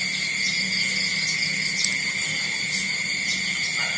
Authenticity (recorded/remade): recorded